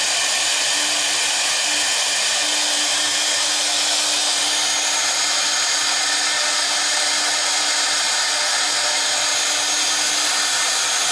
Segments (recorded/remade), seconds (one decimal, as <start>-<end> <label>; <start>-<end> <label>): 0.0-11.1 recorded